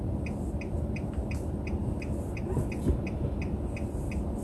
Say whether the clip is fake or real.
real